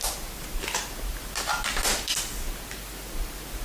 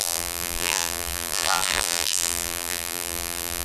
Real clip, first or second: first